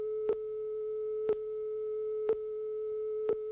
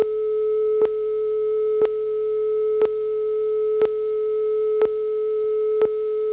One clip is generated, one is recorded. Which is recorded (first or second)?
second